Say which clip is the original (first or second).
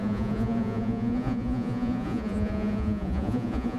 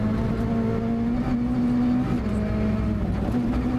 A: second